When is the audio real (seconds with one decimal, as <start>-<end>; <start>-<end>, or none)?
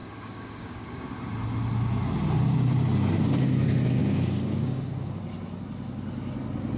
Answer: 1.1-4.0; 5.2-6.8